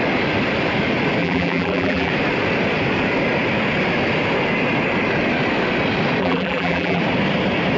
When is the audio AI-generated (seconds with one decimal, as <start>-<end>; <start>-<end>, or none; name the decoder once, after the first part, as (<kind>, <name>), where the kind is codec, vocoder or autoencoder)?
1.2-2.1 (vocoder, BigVGAN v2); 6.2-7.0